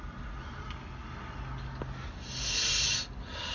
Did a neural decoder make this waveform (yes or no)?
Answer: no